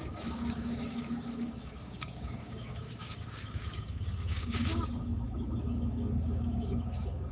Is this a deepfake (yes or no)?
yes